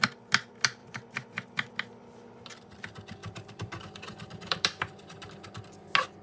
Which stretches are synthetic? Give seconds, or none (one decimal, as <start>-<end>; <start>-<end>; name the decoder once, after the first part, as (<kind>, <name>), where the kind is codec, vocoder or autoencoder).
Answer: 0.8-1.7 (vocoder, BigVGAN v2); 3.2-5.3